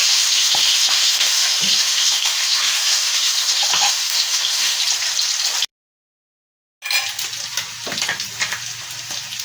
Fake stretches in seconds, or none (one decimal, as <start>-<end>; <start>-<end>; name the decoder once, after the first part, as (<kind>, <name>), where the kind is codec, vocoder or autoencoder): 0.0-4.8 (autoencoder, DAC-VAE)